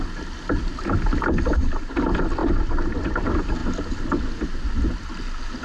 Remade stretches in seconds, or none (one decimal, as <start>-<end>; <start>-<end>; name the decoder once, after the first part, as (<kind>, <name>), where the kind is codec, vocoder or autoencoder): none